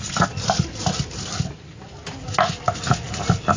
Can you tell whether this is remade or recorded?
recorded